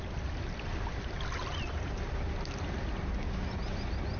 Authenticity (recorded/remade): recorded